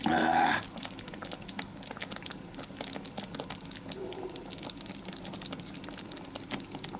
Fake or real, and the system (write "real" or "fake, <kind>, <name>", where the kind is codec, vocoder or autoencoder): real